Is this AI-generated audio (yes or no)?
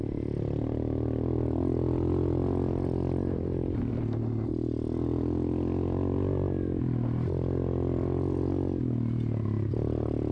no